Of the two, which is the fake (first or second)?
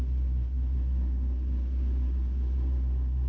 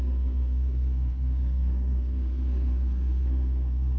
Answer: second